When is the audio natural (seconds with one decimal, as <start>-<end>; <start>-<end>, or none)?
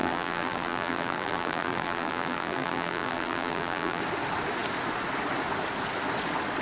4.0-6.6